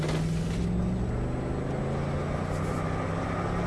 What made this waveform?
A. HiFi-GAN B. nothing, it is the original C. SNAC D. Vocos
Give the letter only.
B